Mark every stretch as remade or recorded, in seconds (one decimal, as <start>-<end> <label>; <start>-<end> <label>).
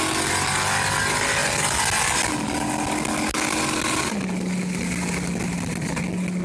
0.0-6.4 recorded